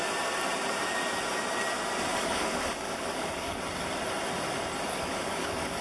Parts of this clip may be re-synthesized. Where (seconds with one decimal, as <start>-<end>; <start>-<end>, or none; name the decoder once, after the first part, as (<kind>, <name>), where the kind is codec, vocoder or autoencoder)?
2.1-3.6 (codec, DAC); 4.9-5.8